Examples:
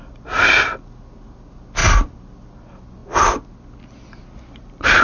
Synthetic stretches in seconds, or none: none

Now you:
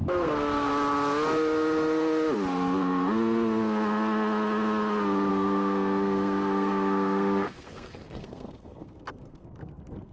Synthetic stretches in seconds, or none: 0.0-0.7 (codec, SNAC); 5.3-10.1

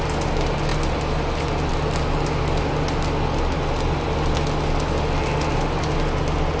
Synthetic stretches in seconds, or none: none

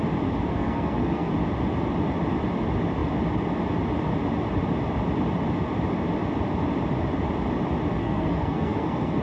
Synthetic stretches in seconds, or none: 0.5-1.3 (codec, SNAC); 8.0-9.2

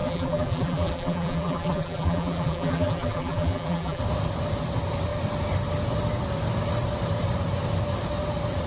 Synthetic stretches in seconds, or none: 0.0-4.0 (vocoder, BigVGAN v2)

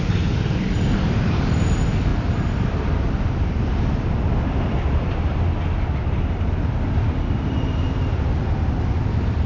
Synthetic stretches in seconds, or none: 0.0-5.3 (vocoder, BigVGAN v2); 9.0-9.5

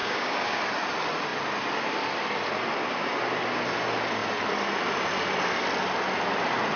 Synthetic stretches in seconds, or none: 0.0-0.6 (codec, DAC)

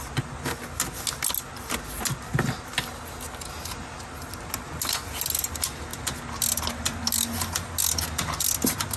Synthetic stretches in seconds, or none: none